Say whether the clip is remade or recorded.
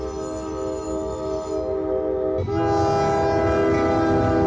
recorded